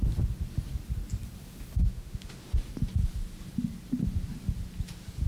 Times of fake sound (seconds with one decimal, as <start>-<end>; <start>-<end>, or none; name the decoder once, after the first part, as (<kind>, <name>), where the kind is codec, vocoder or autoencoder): 1.8-2.4 (autoencoder, DAC-VAE)